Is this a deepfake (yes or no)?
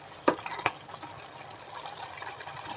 no